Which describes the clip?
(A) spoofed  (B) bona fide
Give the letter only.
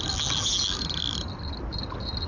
B